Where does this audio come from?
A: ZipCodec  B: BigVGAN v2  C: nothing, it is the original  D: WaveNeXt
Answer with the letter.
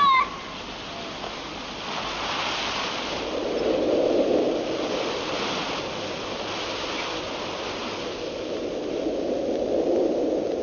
C